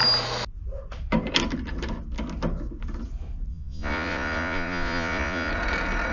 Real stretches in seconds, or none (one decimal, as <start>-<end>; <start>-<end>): 0.0-3.5; 5.5-6.1